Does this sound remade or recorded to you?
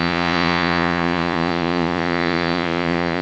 remade